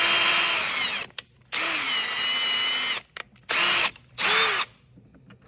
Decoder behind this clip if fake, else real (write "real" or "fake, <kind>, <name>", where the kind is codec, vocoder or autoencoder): real